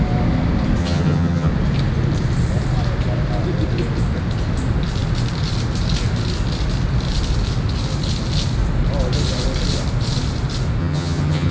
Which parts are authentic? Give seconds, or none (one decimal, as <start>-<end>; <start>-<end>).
0.0-0.8; 1.5-10.8